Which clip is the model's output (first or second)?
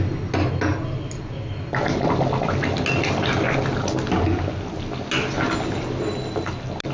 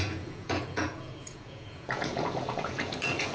second